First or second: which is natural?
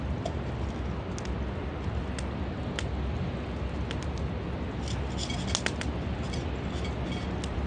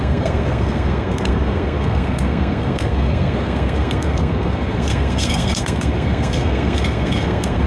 first